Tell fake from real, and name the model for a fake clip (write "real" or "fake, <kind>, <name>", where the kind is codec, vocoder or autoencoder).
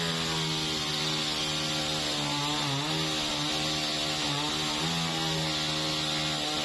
real